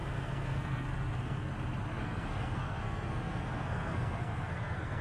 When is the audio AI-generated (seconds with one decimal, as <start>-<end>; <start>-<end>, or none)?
0.0-1.5; 1.9-5.0